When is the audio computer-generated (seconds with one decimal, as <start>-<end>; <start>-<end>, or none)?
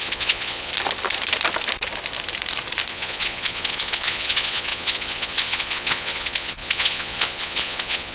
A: 0.0-0.7; 2.9-8.1